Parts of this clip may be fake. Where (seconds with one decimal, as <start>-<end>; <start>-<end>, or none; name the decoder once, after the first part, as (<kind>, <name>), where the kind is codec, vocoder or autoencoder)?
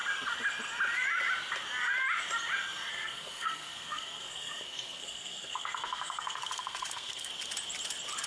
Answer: 2.9-7.3 (codec, SNAC)